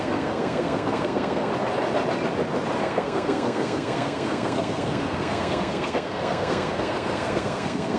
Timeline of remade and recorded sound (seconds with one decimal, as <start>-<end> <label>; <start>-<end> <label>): 0.0-1.5 remade; 1.5-2.8 recorded; 2.8-8.0 remade